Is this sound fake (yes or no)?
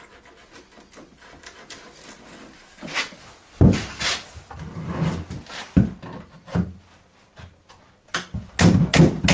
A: no